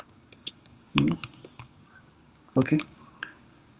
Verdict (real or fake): fake